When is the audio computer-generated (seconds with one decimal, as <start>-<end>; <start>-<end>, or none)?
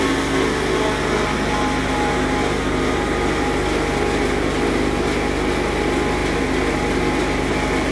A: none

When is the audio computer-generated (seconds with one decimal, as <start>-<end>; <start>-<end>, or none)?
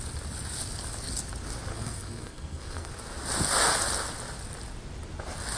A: 1.7-2.9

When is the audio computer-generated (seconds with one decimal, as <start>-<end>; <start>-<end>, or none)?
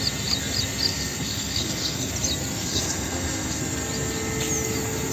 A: 0.9-2.1; 2.6-3.6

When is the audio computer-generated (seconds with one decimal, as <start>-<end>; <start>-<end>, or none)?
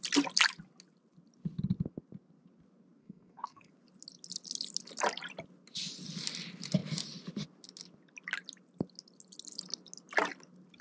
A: 3.0-3.7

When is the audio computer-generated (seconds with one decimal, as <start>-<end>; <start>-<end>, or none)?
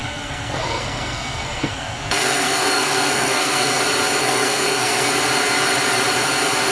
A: 0.0-3.8; 4.2-5.2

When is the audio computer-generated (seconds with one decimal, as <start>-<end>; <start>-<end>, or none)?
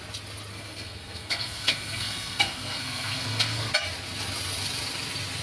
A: 0.5-3.7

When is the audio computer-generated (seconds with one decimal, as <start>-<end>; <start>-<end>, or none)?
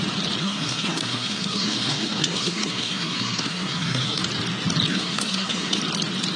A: 0.4-4.2; 4.9-5.8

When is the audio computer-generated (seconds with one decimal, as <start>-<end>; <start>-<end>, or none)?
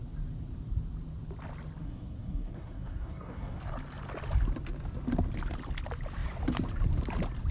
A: 1.8-3.6